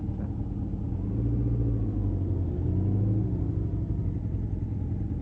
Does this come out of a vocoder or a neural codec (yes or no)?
no